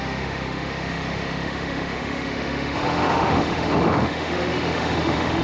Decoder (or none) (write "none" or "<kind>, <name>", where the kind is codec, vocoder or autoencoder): autoencoder, DAC-VAE